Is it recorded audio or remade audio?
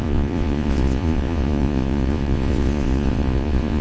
remade